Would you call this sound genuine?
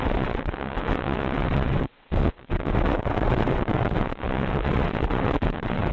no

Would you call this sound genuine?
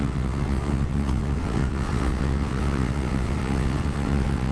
no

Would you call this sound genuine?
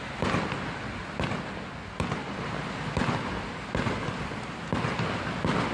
yes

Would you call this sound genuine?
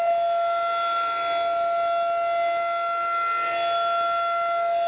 yes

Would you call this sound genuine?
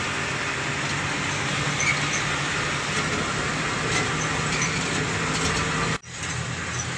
yes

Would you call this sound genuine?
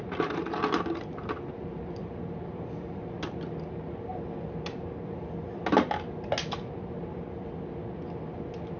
yes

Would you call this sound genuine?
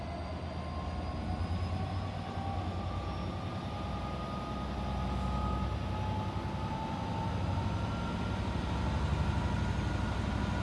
yes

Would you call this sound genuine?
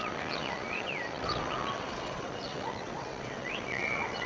no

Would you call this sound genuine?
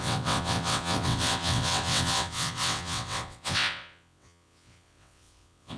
no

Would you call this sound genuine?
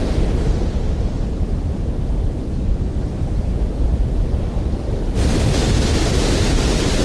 yes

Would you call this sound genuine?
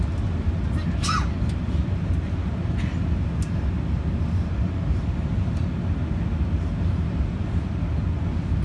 yes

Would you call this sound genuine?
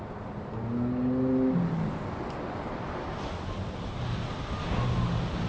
yes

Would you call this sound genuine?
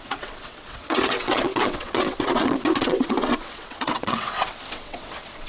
no